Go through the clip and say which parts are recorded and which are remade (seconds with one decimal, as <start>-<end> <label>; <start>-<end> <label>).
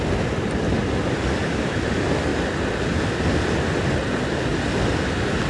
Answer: 0.0-5.5 recorded